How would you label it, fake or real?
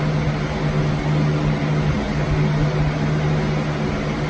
real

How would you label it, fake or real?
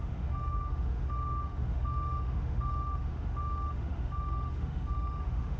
fake